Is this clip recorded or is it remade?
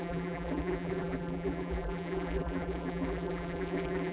remade